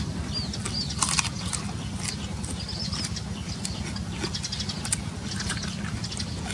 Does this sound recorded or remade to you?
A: recorded